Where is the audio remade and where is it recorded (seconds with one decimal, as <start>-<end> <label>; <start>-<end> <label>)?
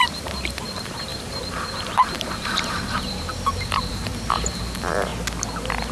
0.0-5.1 remade; 5.1-5.9 recorded